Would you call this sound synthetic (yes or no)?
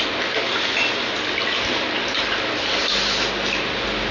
no